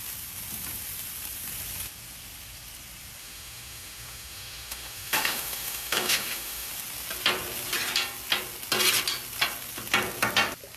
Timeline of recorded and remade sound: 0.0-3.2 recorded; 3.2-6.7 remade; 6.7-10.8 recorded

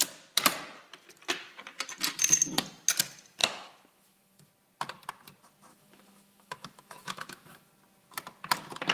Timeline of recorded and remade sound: 0.0-3.4 recorded; 3.4-4.5 remade; 4.5-5.7 recorded; 5.7-7.7 remade; 7.7-8.9 recorded

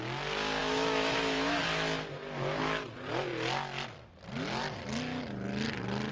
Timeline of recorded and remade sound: 0.0-0.6 recorded; 0.6-1.6 remade; 1.6-6.1 recorded

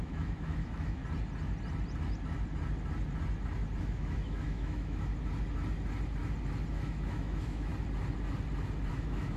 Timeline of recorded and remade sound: 0.0-1.0 remade; 1.0-3.8 recorded; 3.8-5.1 remade; 5.1-6.7 recorded; 6.7-7.7 remade; 7.7-8.9 recorded; 8.9-9.4 remade